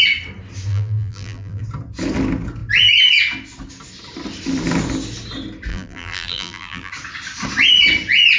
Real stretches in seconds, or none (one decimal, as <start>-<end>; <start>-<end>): 0.0-0.7; 1.6-5.7; 6.9-8.4